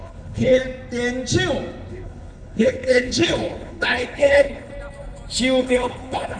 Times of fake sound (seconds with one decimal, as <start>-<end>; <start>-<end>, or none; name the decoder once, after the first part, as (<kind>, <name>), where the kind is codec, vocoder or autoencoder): 0.0-0.6 (codec, HILCodec); 1.9-4.7; 5.6-6.4